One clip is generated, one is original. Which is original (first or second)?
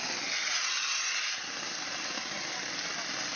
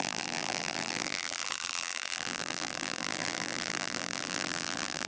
first